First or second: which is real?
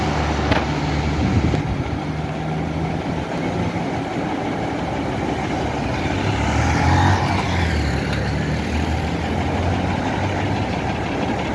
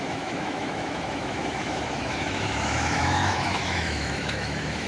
first